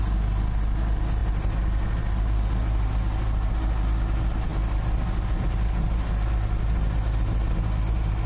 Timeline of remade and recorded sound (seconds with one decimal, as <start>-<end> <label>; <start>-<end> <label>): 0.0-8.3 recorded